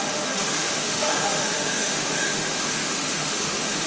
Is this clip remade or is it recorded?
remade